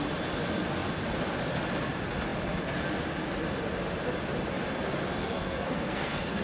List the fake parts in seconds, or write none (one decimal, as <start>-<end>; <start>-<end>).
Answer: 5.2-6.4